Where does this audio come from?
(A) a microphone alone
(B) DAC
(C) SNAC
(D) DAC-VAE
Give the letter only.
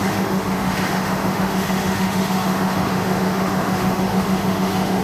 D